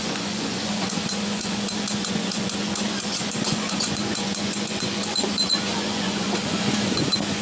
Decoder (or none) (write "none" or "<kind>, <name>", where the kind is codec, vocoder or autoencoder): vocoder, Vocos